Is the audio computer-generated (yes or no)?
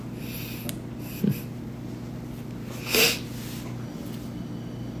no